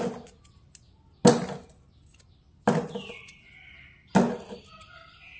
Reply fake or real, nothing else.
real